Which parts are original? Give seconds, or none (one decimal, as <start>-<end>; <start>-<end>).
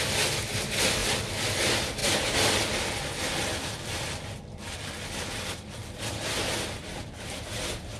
0.0-8.0